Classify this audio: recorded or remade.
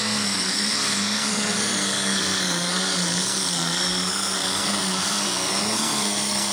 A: remade